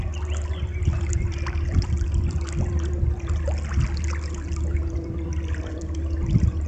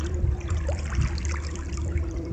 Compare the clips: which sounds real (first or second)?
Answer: first